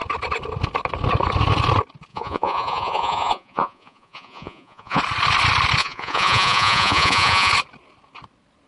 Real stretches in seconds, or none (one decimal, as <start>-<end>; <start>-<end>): 0.0-2.1; 5.0-5.8; 7.5-8.7